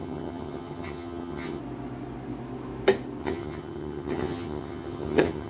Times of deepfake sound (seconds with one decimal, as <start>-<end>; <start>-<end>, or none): 0.0-1.6; 3.2-5.5